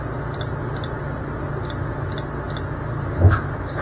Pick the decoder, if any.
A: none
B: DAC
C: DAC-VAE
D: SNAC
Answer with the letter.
A